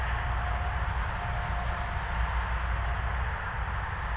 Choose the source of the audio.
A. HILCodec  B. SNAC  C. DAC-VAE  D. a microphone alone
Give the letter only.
D